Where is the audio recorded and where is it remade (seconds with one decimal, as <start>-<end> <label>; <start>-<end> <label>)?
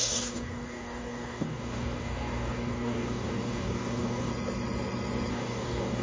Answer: 0.0-4.3 remade; 4.3-5.3 recorded; 5.3-6.0 remade